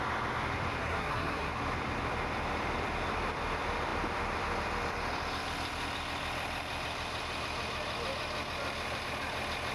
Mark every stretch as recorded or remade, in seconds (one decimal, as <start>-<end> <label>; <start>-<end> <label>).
0.0-0.8 recorded; 0.8-1.5 remade; 1.5-9.7 recorded